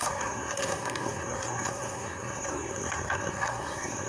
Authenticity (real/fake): fake